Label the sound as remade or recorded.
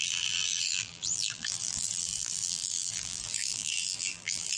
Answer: remade